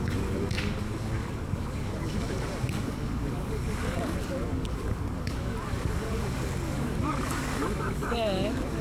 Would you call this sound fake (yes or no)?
yes